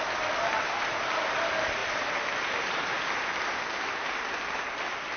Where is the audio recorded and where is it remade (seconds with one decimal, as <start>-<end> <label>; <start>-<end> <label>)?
0.0-5.2 recorded